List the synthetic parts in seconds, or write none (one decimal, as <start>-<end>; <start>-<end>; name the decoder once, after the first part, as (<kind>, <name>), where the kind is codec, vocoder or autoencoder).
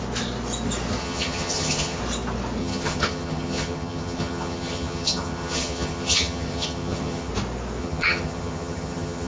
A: 1.0-2.0 (vocoder, HiFi-GAN); 2.6-7.3; 7.8-9.3